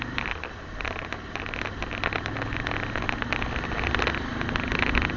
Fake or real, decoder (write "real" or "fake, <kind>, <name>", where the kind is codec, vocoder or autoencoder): real